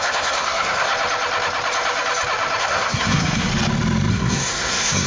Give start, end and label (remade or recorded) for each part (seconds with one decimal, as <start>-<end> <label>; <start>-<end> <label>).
0.0-0.9 remade; 0.9-2.6 recorded; 2.6-3.5 remade; 3.5-4.1 recorded; 4.1-5.1 remade